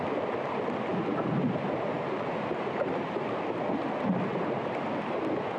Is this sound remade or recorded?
recorded